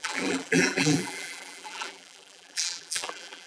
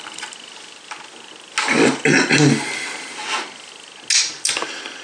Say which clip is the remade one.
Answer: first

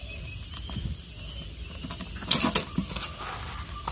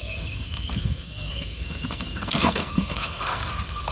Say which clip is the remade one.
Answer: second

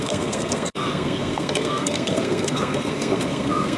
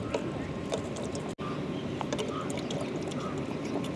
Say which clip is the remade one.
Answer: first